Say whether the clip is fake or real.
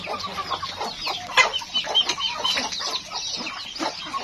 real